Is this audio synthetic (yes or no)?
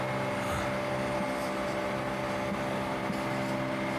no